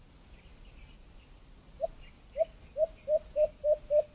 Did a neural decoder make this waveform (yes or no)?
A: no